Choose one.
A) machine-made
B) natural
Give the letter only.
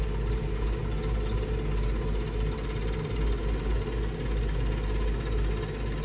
B